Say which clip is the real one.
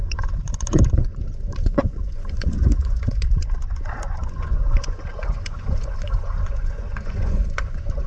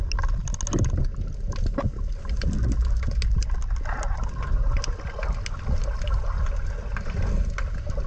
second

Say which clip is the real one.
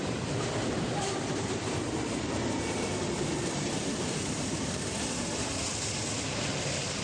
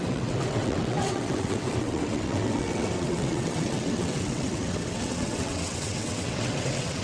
first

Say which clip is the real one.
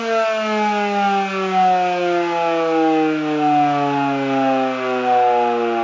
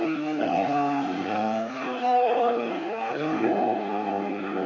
first